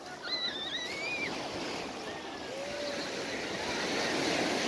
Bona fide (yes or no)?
yes